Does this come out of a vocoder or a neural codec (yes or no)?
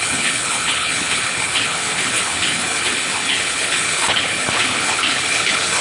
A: yes